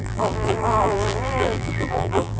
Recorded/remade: remade